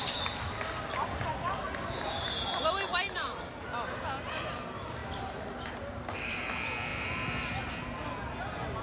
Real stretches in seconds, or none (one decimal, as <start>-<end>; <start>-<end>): 0.0-2.9; 3.5-6.9; 7.5-8.8